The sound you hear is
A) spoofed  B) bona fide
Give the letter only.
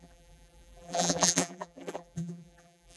A